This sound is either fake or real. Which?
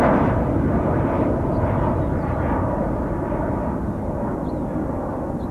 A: real